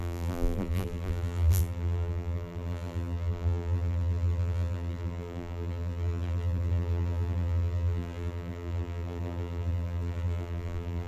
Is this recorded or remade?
remade